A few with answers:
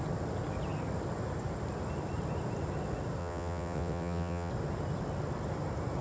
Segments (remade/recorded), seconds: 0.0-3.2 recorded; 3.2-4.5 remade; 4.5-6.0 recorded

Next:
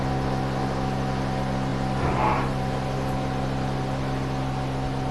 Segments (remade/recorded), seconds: 0.0-5.1 recorded

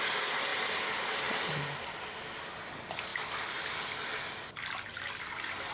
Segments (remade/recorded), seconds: 0.0-5.7 recorded

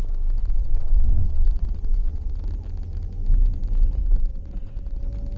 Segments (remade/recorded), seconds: 0.0-0.4 recorded; 0.4-2.4 remade; 2.4-4.0 recorded; 4.0-5.0 remade; 5.0-5.4 recorded

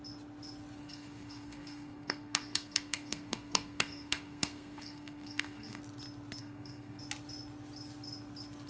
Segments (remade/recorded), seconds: 0.0-0.8 recorded; 0.8-5.8 remade; 5.8-6.4 recorded; 6.4-7.0 remade; 7.0-8.7 recorded

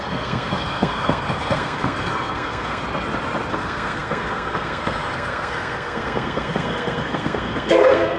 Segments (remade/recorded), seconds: 0.0-2.8 remade; 2.8-3.5 recorded; 3.5-8.2 remade

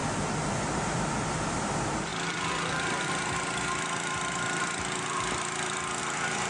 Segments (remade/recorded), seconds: 0.0-6.5 remade